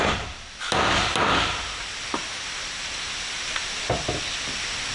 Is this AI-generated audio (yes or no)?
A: no